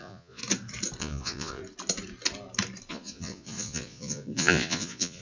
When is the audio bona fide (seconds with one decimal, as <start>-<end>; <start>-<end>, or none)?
0.4-1.0; 1.6-2.9